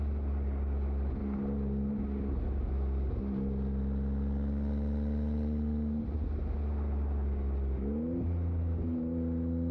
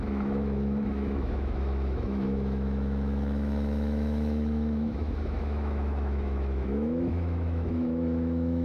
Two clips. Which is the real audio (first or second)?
first